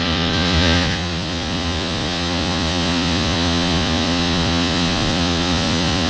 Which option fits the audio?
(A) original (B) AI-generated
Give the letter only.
B